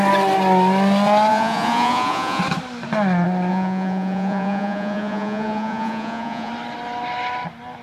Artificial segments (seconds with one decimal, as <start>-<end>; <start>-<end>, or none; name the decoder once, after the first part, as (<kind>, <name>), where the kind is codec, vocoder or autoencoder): 1.3-2.4 (vocoder, Vocos); 3.5-6.5